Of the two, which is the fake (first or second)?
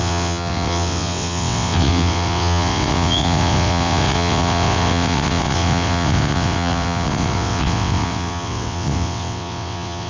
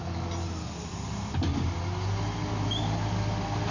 first